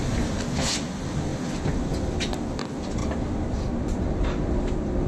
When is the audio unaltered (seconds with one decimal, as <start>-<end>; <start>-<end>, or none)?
0.0-5.1